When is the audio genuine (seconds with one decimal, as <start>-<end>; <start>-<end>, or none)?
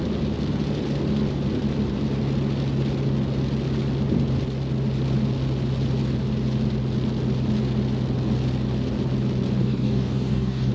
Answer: 0.0-9.6